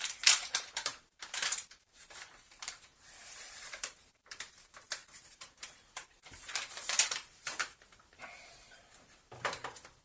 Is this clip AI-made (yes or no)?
yes